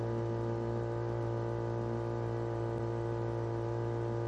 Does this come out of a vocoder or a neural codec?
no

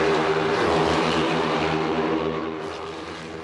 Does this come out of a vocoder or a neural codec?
yes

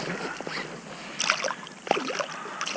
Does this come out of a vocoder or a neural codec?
no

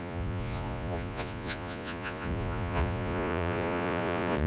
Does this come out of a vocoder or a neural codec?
yes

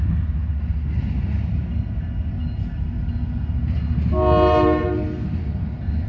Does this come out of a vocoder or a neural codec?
no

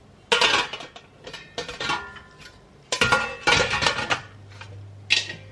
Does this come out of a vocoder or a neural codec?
no